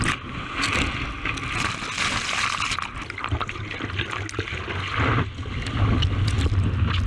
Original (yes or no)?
yes